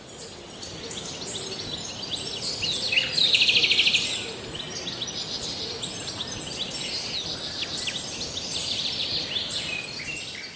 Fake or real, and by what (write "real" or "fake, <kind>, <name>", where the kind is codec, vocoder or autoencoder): real